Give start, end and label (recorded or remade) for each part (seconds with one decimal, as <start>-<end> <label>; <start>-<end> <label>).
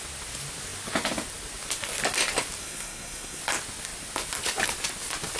0.0-2.6 recorded; 2.6-3.4 remade; 3.4-5.4 recorded